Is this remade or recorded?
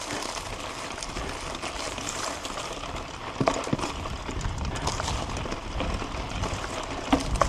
recorded